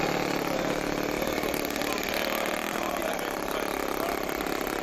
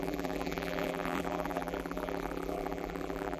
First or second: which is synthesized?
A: second